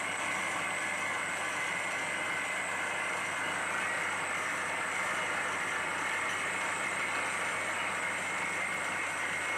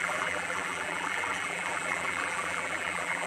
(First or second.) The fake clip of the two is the second